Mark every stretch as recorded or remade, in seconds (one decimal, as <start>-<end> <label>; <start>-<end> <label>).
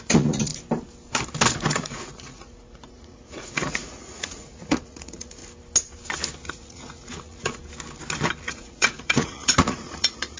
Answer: 0.0-0.5 remade; 0.5-1.7 recorded; 1.7-5.4 remade; 5.4-6.5 recorded; 6.5-7.6 remade; 7.6-8.4 recorded; 8.4-10.4 remade